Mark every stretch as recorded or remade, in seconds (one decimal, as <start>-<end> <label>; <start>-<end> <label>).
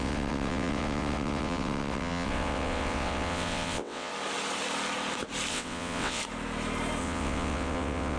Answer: 0.0-4.1 remade; 4.1-5.5 recorded; 5.5-6.2 remade; 6.2-7.0 recorded; 7.0-8.2 remade